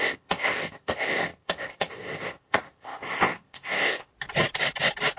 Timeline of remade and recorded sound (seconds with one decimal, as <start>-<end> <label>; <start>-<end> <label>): 0.0-4.1 remade; 4.1-5.2 recorded